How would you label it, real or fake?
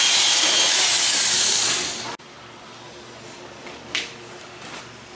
real